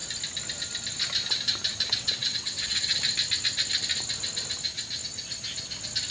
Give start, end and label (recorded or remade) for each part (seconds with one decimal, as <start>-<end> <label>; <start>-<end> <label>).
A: 0.0-1.9 recorded; 1.9-2.9 remade; 2.9-6.1 recorded